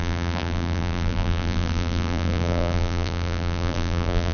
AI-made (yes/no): yes